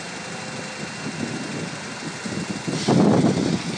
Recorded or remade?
recorded